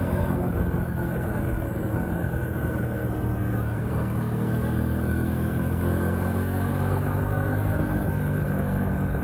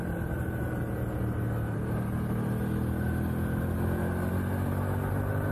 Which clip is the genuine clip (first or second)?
second